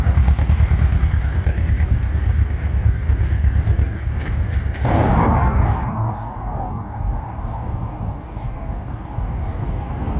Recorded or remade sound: remade